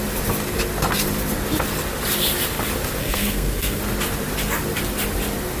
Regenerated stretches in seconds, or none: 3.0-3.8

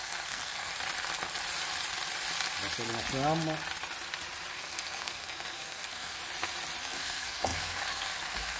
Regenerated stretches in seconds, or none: 0.0-0.7; 4.5-6.2; 6.8-8.6

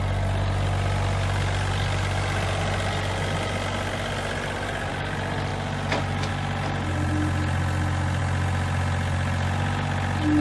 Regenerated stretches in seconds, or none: none